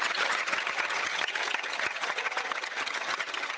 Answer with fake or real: fake